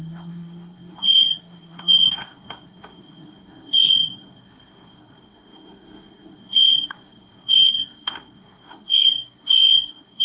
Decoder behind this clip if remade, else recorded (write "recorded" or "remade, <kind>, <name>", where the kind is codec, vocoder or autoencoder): remade, codec, SNAC